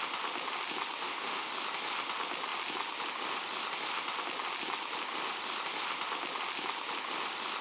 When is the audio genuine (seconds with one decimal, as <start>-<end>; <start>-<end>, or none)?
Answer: 0.0-1.0; 1.5-7.6